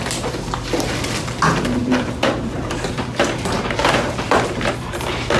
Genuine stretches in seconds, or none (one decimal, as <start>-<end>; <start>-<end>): 0.0-1.8; 4.5-5.4

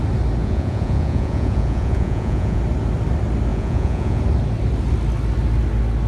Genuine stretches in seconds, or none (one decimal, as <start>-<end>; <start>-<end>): 0.0-0.4; 2.6-3.5; 4.2-6.1

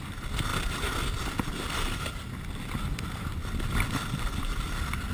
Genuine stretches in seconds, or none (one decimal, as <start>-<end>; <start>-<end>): 0.0-5.1

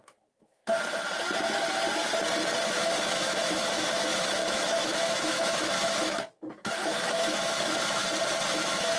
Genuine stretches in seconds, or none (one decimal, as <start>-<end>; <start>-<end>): 0.6-2.6; 8.0-8.5

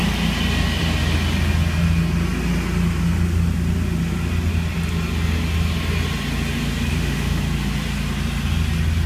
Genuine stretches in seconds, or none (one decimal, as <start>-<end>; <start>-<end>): 0.0-6.9; 7.4-9.1